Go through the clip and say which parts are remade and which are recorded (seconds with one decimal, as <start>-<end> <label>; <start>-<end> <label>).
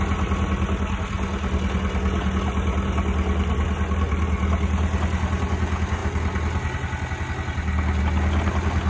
0.0-8.9 recorded